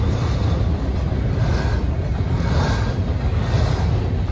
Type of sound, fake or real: real